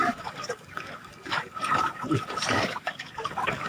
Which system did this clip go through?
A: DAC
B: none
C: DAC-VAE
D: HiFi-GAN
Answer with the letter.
A